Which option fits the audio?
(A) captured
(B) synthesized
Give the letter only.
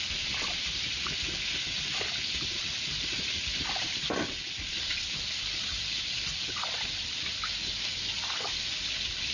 A